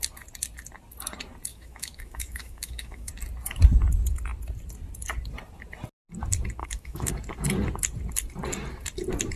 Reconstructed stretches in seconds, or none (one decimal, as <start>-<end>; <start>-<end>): 1.5-3.1; 6.6-7.1